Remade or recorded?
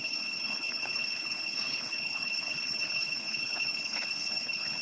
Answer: remade